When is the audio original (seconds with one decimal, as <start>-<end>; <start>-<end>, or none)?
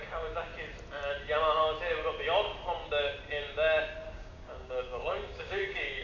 0.5-4.1